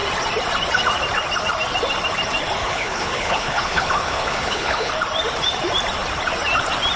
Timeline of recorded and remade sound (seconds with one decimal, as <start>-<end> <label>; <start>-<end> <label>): 0.0-2.6 recorded; 2.6-4.9 remade; 4.9-7.0 recorded